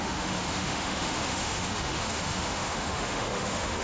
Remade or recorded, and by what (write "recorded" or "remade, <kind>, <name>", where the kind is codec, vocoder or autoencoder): remade, autoencoder, DAC-VAE